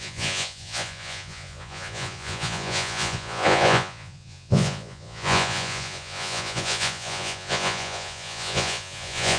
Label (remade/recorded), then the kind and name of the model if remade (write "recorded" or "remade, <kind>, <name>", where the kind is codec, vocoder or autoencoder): remade, vocoder, Vocos